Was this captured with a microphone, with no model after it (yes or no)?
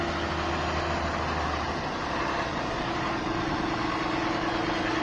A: yes